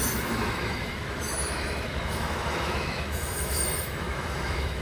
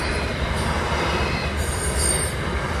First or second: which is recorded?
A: second